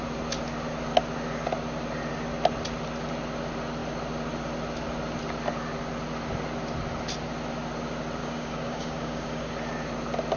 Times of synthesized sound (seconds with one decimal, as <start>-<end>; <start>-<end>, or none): 8.2-9.5